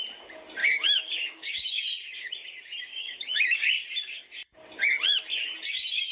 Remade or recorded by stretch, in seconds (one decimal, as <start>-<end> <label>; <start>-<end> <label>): 0.0-0.6 recorded; 0.6-1.8 remade; 1.8-2.9 recorded; 2.9-3.7 remade; 3.7-6.1 recorded